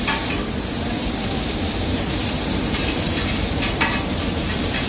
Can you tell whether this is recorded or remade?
remade